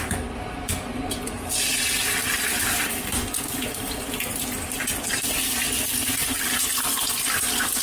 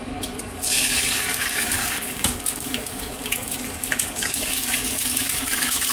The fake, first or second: second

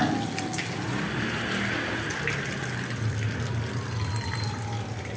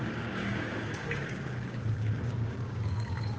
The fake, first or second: second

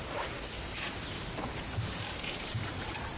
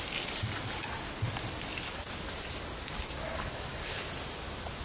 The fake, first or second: first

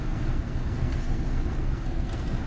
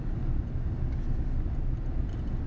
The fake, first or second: first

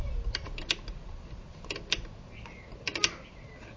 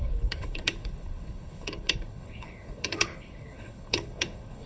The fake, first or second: second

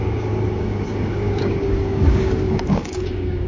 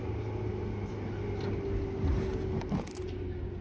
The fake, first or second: first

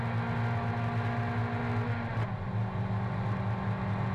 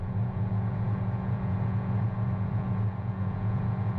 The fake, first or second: second